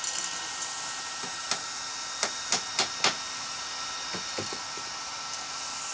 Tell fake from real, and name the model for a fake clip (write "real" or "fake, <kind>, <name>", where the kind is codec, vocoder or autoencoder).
real